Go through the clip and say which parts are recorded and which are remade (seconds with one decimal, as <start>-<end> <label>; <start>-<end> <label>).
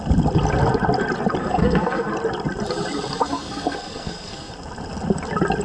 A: 0.0-1.4 recorded; 1.4-2.1 remade; 2.1-3.2 recorded; 3.2-4.5 remade; 4.5-5.6 recorded